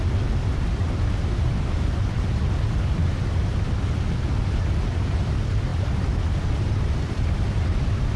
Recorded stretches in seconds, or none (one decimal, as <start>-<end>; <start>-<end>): 0.0-8.2